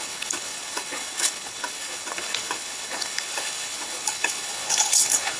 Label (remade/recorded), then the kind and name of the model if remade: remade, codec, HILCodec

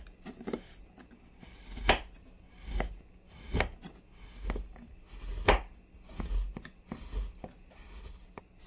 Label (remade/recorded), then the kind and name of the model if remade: recorded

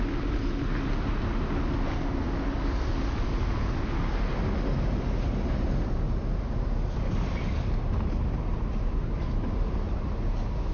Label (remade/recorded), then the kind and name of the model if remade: recorded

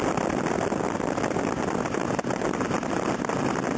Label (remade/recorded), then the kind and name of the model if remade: recorded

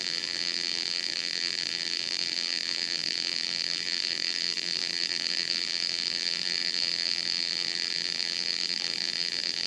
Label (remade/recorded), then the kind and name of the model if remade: remade, vocoder, BigVGAN v2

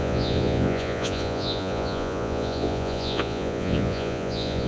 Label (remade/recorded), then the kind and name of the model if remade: remade, vocoder, Vocos